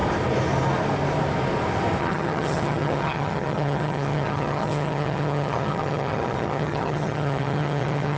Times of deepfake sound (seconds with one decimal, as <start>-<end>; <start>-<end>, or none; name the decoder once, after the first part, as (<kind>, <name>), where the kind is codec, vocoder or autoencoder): 2.0-8.2 (vocoder, HiFi-GAN)